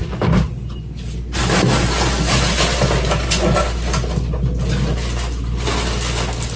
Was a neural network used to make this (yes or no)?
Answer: no